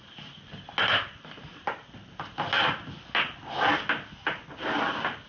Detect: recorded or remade recorded